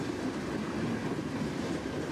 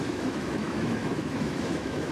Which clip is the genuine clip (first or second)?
first